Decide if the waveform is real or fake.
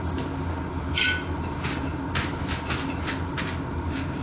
real